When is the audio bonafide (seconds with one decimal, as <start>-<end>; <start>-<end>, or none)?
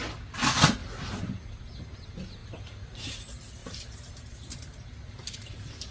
0.0-0.8; 1.3-2.4; 3.0-3.6; 5.5-5.9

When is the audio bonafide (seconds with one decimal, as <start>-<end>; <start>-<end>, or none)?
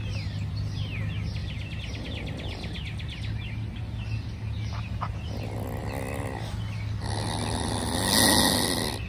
0.0-9.1